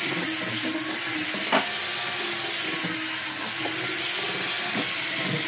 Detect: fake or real real